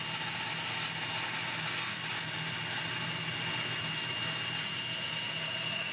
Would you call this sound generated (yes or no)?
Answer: no